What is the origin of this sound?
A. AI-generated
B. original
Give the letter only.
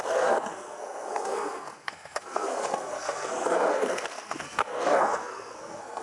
A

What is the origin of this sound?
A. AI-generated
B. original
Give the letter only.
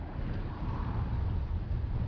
B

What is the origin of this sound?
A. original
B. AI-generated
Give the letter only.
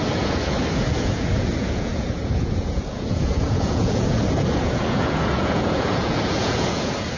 B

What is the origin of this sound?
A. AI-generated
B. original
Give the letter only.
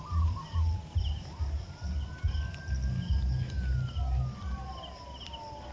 B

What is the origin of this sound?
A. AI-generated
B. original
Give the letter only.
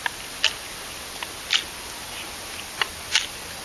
B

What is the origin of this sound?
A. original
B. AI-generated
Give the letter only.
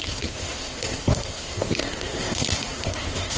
B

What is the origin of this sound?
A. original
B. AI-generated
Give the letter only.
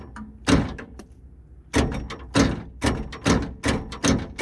A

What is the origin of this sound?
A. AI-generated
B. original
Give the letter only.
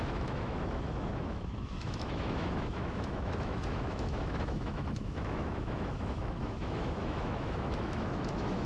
A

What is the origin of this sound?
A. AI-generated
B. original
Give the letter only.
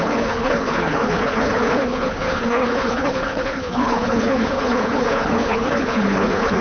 A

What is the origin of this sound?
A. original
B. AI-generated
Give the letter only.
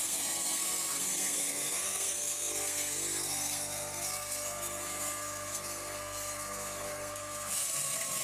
B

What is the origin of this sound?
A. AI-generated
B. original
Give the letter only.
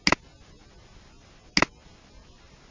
B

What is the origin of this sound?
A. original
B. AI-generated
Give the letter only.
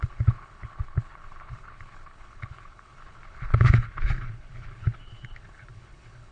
B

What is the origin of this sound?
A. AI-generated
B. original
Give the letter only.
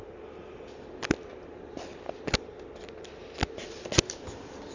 B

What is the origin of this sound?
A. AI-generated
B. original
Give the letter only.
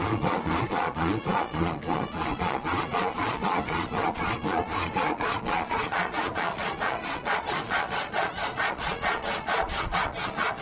A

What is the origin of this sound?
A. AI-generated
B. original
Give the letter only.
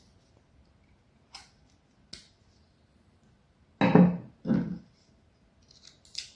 B